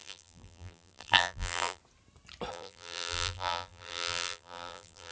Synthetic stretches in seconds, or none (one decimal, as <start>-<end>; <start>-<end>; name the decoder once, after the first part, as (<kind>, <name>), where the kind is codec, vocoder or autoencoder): 0.0-1.8 (vocoder, BigVGAN v2); 2.5-5.1